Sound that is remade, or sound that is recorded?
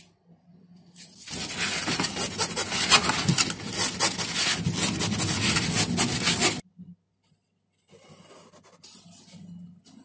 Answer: recorded